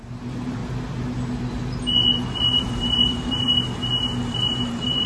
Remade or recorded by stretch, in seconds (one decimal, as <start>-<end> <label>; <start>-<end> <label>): 0.0-0.6 remade; 0.6-2.6 recorded; 2.6-3.5 remade; 3.5-4.3 recorded; 4.3-5.1 remade